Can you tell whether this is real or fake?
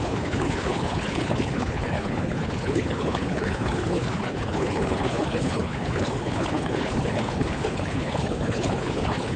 fake